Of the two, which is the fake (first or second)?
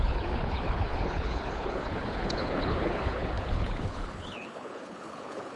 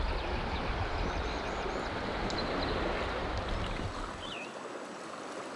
first